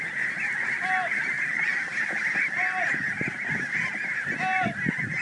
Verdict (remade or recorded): recorded